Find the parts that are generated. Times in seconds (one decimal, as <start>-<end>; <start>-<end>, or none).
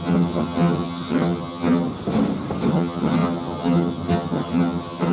0.0-1.9; 2.7-5.1